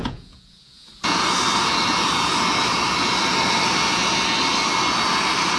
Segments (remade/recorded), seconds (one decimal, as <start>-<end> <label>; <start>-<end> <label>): 0.0-0.9 remade; 0.9-5.6 recorded